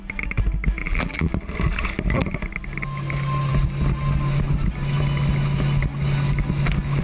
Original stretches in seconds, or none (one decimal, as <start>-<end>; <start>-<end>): 0.0-0.8; 1.3-7.0